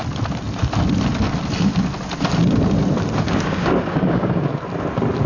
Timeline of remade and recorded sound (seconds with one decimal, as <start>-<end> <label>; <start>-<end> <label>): 0.0-3.2 recorded; 3.2-4.5 remade; 4.5-5.3 recorded